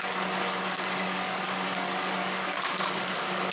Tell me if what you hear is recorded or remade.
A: remade